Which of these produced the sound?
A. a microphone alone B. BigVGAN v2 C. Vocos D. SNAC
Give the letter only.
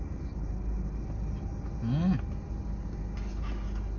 A